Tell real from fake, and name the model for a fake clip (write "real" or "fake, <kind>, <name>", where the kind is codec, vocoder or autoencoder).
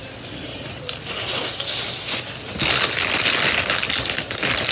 real